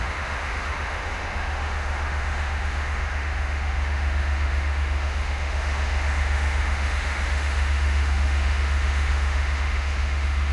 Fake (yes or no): yes